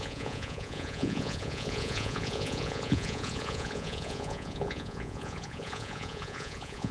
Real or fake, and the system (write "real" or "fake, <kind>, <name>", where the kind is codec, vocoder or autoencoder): fake, vocoder, Vocos